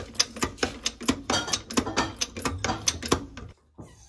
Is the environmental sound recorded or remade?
recorded